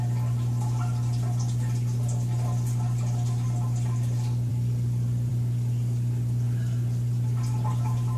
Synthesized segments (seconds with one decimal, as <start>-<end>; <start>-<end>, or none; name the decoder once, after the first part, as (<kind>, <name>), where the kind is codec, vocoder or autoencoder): none